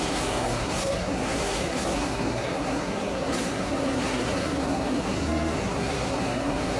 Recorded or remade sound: remade